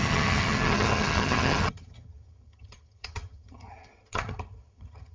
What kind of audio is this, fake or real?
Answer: fake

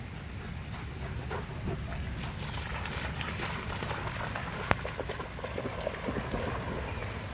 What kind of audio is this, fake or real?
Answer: real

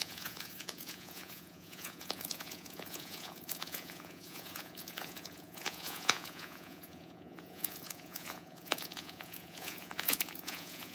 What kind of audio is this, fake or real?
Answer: fake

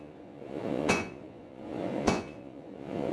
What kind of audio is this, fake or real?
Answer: fake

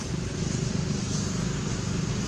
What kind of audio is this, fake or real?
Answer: real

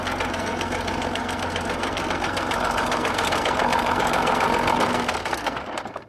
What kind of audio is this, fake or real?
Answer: fake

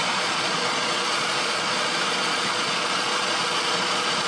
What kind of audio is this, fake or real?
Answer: fake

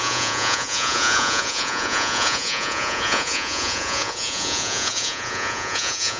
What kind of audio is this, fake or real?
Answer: fake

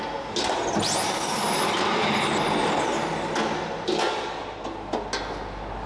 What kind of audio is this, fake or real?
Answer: real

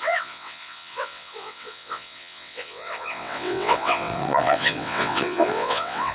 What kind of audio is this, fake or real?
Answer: fake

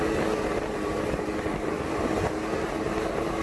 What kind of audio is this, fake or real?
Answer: real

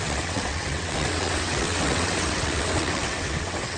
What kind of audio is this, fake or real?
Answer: fake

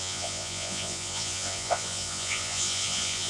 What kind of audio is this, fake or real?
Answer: fake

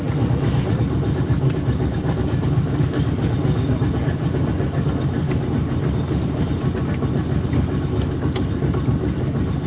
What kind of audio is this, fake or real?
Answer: real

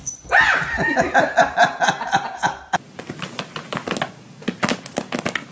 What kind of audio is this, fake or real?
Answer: real